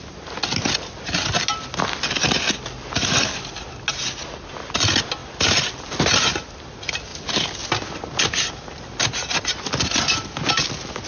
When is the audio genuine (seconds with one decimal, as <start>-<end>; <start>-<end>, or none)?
0.0-11.1